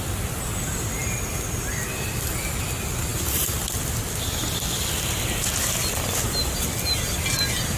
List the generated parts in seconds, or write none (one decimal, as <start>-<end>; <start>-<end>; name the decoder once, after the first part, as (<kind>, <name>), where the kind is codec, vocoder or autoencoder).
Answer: none